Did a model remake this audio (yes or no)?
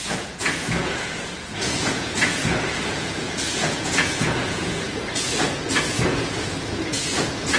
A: yes